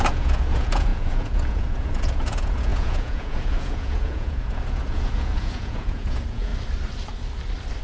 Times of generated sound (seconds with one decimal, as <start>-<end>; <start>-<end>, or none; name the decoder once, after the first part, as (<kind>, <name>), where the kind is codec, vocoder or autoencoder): 0.0-6.5 (vocoder, Vocos)